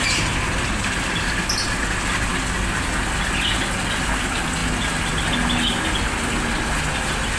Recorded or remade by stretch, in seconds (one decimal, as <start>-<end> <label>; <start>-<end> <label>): 0.0-7.4 recorded